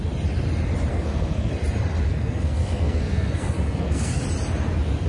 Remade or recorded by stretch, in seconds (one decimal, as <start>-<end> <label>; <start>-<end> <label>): 0.0-0.9 recorded; 0.9-1.5 remade; 1.5-2.1 recorded; 2.1-4.2 remade; 4.2-5.1 recorded